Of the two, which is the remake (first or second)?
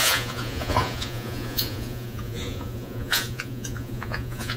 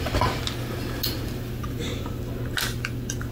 first